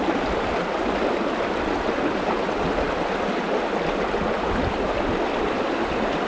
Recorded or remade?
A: recorded